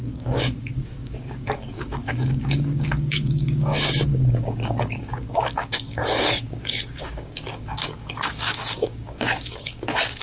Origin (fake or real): fake